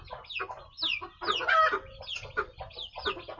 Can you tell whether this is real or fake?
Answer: real